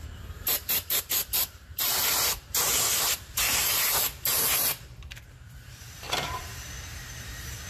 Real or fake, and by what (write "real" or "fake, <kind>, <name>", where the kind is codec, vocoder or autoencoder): fake, vocoder, BigVGAN v2